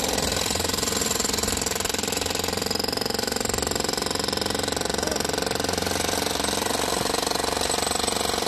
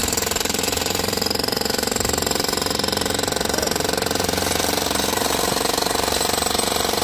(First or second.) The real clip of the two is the first